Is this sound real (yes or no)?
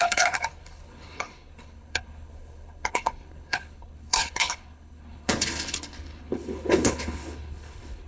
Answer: no